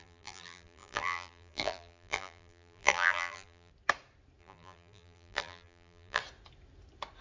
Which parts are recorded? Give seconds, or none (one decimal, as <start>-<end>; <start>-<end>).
3.7-4.4; 6.2-7.2